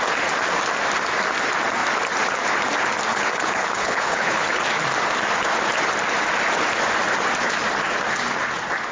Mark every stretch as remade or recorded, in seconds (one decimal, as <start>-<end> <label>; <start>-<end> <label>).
0.0-3.1 recorded; 3.1-4.6 remade; 4.6-8.9 recorded